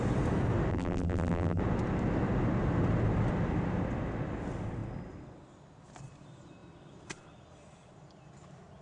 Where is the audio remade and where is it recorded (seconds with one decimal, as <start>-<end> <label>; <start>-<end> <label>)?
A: 0.0-0.7 recorded; 0.7-1.6 remade; 1.6-8.8 recorded

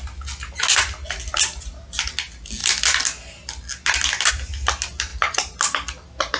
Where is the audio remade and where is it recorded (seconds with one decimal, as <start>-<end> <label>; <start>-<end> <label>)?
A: 0.0-6.4 recorded

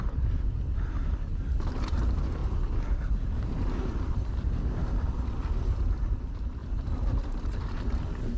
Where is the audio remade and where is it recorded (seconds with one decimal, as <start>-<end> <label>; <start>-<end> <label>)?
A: 0.0-2.4 remade; 2.4-3.1 recorded; 3.1-8.4 remade

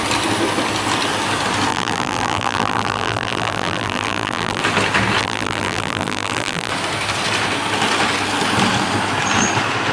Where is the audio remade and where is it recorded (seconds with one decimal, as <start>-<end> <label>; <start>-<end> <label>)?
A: 0.0-1.7 recorded; 1.7-4.6 remade; 4.6-5.2 recorded; 5.2-6.7 remade; 6.7-9.9 recorded

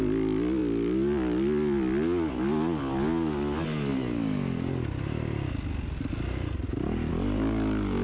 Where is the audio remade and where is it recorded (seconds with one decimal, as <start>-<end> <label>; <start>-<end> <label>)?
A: 0.0-8.0 recorded